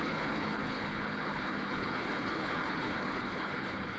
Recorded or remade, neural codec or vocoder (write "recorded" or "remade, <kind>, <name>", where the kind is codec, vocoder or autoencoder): remade, codec, HILCodec